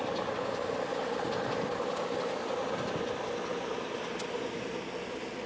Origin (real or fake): real